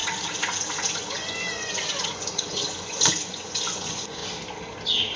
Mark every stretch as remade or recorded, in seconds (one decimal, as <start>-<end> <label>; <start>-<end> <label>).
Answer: 0.0-4.2 remade; 4.2-5.2 recorded